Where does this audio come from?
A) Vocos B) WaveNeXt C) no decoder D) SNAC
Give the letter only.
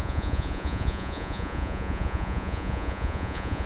A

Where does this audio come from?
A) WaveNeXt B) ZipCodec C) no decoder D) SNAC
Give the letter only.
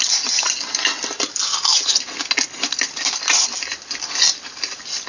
C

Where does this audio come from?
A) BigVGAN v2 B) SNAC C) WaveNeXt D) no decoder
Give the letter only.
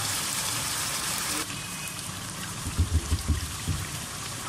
A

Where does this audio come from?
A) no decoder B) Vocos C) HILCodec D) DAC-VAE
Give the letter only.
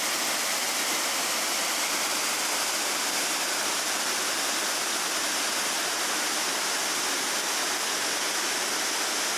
A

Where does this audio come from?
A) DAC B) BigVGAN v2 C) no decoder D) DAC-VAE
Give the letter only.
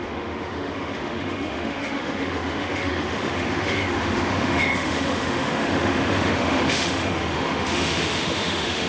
D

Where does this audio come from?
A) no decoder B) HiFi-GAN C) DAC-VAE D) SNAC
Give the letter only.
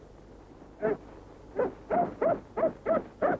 A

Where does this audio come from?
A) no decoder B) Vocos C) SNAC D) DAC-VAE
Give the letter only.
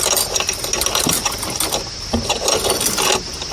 A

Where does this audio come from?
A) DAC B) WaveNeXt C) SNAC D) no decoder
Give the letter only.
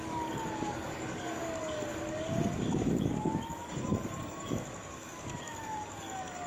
A